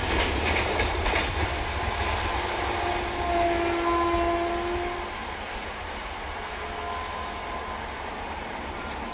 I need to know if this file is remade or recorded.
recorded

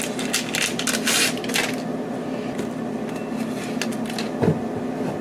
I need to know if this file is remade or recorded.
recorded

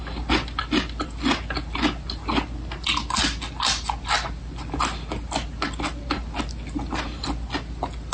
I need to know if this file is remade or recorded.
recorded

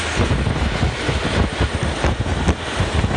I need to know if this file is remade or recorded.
recorded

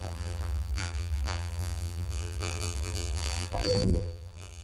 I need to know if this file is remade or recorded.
remade